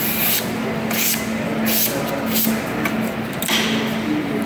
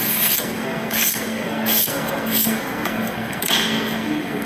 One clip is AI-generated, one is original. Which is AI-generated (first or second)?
second